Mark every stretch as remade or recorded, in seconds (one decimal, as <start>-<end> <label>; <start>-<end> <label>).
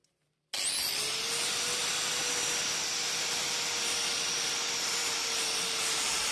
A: 0.0-1.2 recorded; 1.2-6.3 remade